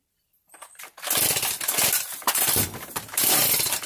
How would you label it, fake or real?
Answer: real